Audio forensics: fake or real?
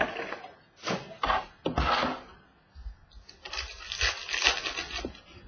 real